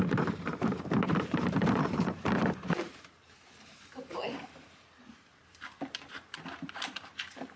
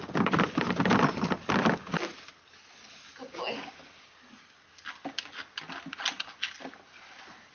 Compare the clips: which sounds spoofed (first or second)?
first